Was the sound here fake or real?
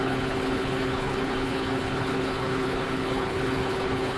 fake